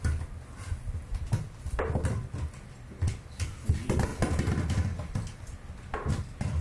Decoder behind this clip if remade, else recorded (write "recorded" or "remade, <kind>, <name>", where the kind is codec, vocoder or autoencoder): recorded